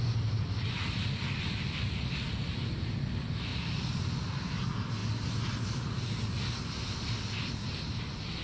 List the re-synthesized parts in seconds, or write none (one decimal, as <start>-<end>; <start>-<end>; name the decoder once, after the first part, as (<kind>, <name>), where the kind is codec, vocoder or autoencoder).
none